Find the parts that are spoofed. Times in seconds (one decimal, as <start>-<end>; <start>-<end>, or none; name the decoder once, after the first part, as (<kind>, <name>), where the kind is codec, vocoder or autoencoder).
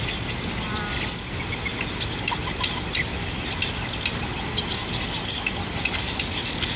none